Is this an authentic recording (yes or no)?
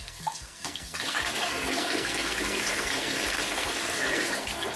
no